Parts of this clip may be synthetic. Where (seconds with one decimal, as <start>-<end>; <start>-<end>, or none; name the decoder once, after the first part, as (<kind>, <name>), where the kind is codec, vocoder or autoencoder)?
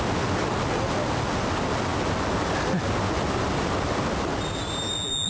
none